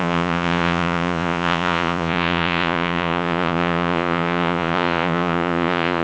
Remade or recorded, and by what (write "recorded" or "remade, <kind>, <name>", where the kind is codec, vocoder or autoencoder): remade, vocoder, Vocos